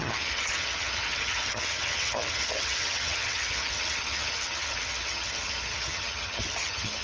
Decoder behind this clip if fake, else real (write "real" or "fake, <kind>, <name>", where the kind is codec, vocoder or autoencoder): fake, vocoder, HiFi-GAN